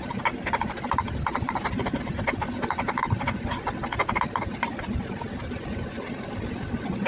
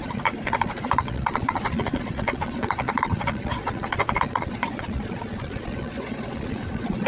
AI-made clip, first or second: second